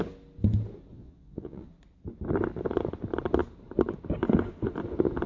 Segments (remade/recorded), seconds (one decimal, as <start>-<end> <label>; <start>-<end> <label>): 0.0-0.9 recorded; 0.9-1.7 remade; 1.7-5.3 recorded